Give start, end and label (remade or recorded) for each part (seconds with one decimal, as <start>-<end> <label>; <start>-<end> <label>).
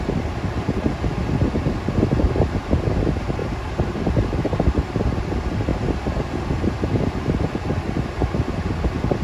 0.0-1.1 remade; 1.1-2.6 recorded; 2.6-5.7 remade; 5.7-6.5 recorded; 6.5-9.2 remade